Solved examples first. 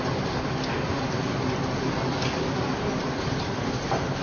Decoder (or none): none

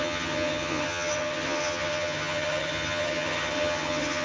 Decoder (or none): vocoder, HiFi-GAN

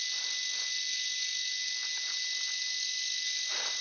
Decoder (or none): none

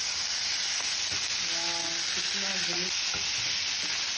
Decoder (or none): none